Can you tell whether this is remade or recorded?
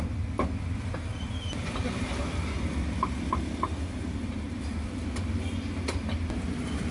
recorded